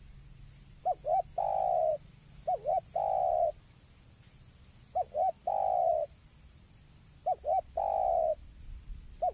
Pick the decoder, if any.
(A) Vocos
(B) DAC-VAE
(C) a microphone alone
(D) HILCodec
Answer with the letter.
C